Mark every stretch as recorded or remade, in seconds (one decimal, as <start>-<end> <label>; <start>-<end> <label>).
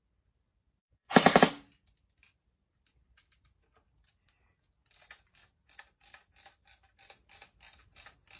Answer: 0.0-0.8 recorded; 0.8-1.4 remade; 1.4-8.4 recorded